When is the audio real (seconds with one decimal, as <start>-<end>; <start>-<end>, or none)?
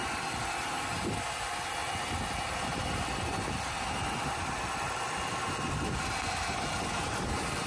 0.0-7.7